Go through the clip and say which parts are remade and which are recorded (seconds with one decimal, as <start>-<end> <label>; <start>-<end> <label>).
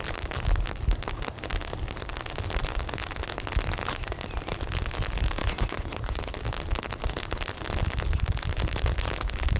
0.0-5.4 recorded; 5.4-6.2 remade; 6.2-9.6 recorded